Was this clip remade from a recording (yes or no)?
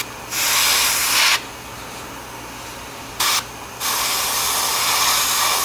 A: no